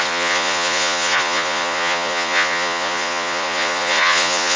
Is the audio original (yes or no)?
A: no